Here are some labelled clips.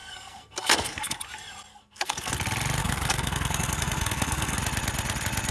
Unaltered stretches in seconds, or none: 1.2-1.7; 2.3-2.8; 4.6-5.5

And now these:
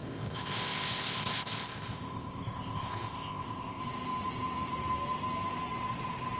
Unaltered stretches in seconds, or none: 3.8-6.4

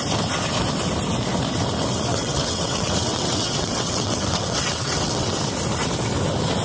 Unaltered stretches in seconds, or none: 0.0-2.1; 5.3-6.6

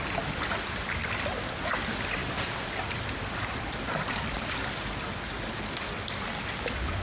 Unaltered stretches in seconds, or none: 0.0-7.0

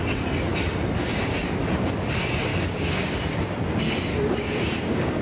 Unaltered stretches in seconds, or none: 0.0-2.5; 3.2-4.1

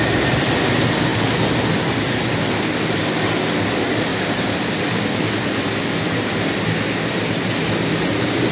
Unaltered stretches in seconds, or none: 0.0-4.1; 4.8-8.5

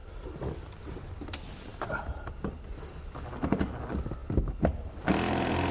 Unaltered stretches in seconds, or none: 0.0-5.7

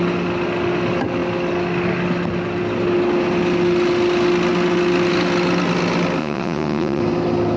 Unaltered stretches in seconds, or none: 0.0-6.2; 7.0-7.6